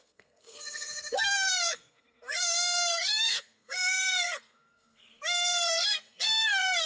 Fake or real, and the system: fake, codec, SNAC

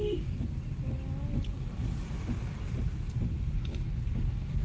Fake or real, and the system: real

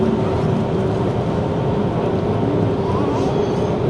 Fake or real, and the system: real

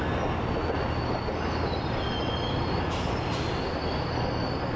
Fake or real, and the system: real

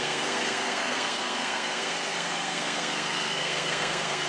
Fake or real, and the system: fake, codec, SNAC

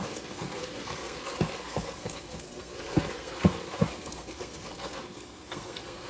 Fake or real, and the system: fake, codec, SNAC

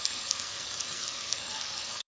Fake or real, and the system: fake, codec, SNAC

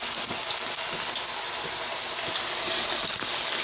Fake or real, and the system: real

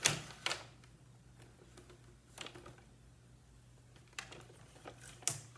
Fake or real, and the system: real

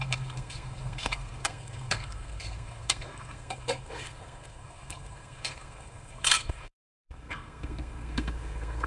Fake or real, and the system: fake, codec, SNAC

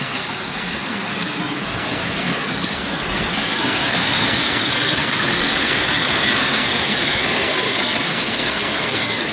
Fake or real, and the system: fake, codec, SNAC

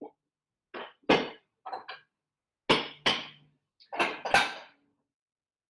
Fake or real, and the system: real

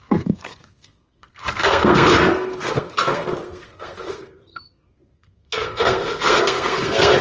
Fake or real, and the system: fake, codec, SNAC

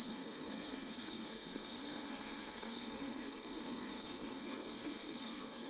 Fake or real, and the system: fake, codec, SNAC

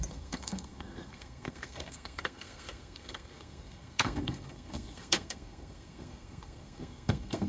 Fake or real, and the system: fake, codec, SNAC